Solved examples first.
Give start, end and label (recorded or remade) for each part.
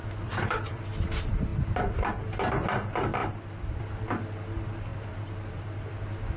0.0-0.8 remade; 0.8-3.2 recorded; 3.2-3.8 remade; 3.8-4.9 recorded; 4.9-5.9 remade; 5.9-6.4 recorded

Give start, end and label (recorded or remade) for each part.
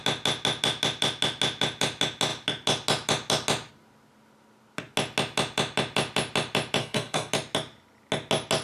0.0-6.8 recorded; 6.8-7.3 remade; 7.3-8.6 recorded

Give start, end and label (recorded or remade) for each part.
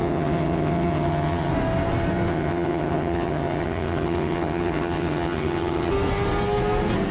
0.0-1.5 remade; 1.5-2.3 recorded; 2.3-5.9 remade; 5.9-7.1 recorded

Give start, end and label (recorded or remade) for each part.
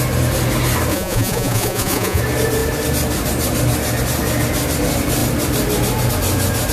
0.0-0.9 recorded; 0.9-2.2 remade; 2.2-6.7 recorded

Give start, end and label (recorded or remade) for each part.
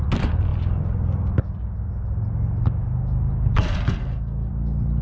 0.0-4.0 recorded; 4.0-4.5 remade; 4.5-5.0 recorded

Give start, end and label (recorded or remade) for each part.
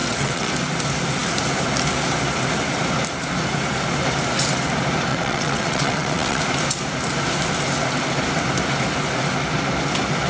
0.0-0.5 remade; 0.5-5.1 recorded; 5.1-6.4 remade; 6.4-10.3 recorded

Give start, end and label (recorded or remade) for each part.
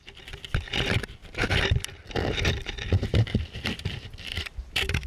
0.0-5.1 remade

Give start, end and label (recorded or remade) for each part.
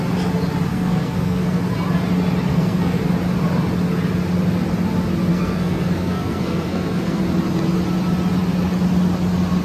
0.0-0.7 recorded; 0.7-1.6 remade; 1.6-2.5 recorded; 2.5-3.0 remade; 3.0-5.3 recorded; 5.3-7.2 remade; 7.2-9.6 recorded